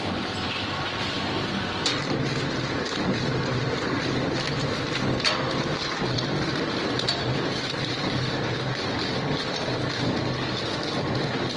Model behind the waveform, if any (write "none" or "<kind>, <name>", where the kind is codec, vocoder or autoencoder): vocoder, BigVGAN v2